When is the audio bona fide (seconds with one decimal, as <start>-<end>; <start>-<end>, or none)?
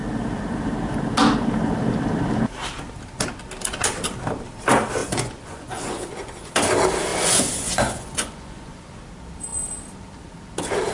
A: 0.0-5.0; 6.5-7.1; 9.0-10.9